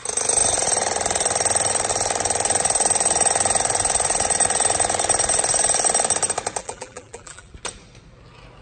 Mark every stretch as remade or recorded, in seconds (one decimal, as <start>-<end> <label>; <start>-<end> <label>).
0.0-6.6 recorded; 6.6-7.5 remade; 7.5-8.6 recorded